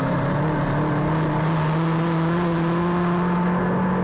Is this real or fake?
real